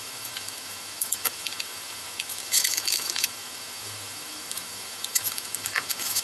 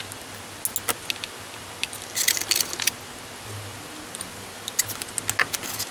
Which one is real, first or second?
second